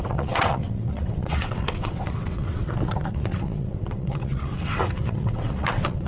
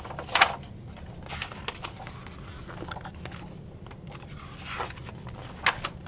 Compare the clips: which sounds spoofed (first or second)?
first